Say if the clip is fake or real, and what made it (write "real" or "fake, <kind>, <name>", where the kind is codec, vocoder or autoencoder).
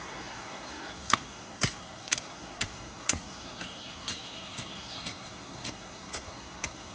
fake, codec, SNAC